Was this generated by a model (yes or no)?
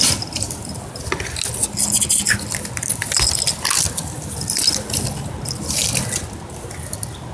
no